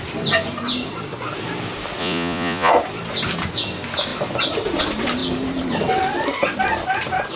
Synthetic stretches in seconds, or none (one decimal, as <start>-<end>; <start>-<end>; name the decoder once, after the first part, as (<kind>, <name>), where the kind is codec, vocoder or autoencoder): 2.0-2.7 (vocoder, Vocos)